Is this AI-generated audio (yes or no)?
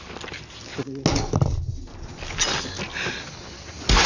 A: no